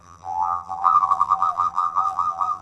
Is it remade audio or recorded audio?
remade